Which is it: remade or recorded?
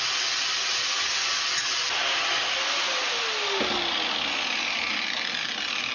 recorded